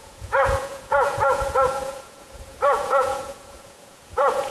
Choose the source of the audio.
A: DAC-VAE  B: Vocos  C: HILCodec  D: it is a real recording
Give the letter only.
B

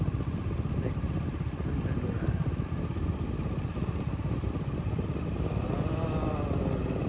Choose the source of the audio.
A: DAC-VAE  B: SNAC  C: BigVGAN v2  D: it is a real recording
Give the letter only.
D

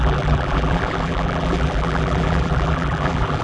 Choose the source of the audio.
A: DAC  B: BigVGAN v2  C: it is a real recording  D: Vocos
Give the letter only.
B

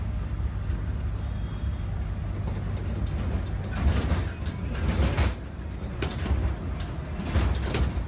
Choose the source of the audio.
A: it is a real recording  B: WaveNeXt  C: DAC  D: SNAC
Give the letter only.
A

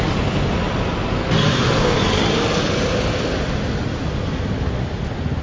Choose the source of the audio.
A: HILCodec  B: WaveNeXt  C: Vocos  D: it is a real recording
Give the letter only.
D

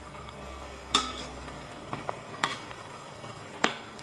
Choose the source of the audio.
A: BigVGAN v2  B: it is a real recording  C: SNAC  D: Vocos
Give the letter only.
C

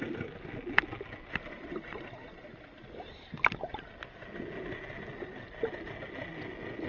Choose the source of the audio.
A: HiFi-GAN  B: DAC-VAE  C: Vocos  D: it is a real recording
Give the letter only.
D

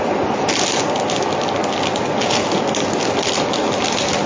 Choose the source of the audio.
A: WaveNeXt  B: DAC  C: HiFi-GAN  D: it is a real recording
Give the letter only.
D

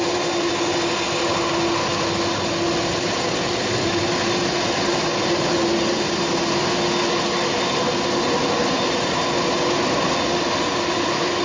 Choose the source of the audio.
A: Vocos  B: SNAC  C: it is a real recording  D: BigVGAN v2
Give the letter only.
C